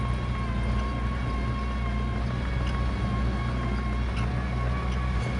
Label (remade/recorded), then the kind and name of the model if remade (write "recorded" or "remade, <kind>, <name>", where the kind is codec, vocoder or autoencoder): recorded